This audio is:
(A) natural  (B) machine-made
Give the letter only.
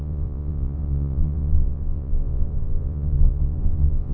B